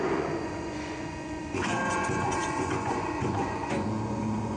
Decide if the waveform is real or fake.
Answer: fake